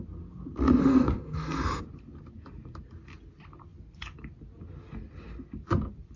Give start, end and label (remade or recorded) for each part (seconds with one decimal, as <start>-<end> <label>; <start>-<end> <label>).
0.0-0.8 recorded; 0.8-1.8 remade; 1.8-6.2 recorded